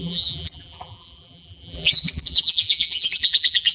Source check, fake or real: fake